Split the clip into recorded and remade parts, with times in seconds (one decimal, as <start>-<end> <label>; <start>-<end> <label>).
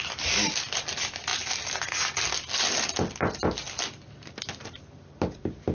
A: 0.0-5.7 recorded